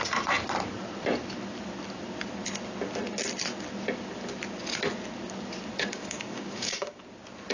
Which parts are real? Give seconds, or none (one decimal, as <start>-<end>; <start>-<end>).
0.0-5.7; 7.0-7.5